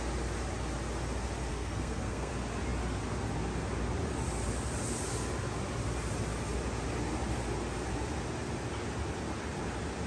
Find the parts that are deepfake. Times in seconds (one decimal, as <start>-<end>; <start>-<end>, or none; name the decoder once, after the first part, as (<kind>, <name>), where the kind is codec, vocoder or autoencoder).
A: 1.5-2.3 (codec, SNAC)